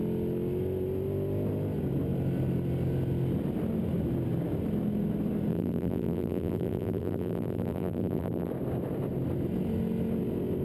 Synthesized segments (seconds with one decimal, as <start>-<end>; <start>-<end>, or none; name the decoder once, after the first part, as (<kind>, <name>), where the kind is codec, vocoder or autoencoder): 5.5-8.5 (vocoder, BigVGAN v2)